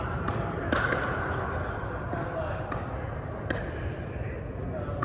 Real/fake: real